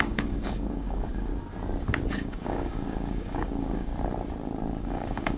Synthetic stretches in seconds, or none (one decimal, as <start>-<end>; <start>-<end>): 0.0-1.3; 2.1-3.9; 4.8-5.4